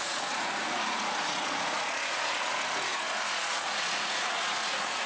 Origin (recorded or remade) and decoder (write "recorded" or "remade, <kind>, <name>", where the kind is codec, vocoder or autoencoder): remade, vocoder, Vocos